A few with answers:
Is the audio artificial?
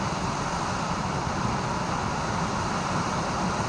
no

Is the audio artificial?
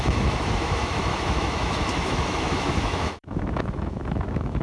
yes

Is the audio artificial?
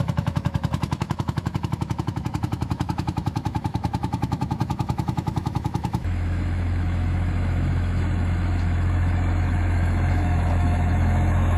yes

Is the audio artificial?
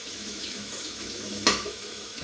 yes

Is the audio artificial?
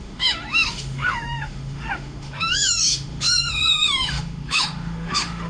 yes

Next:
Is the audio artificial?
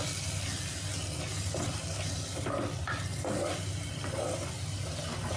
no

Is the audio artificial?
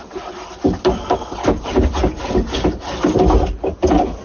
no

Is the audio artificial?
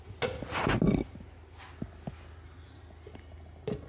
no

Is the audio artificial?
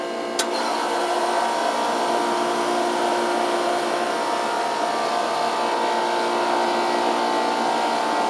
no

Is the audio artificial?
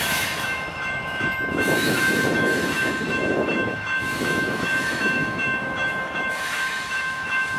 yes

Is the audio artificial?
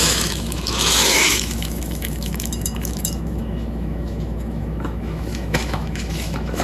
yes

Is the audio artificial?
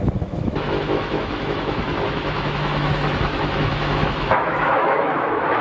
yes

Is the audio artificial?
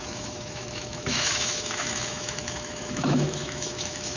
yes